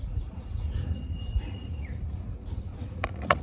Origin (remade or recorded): remade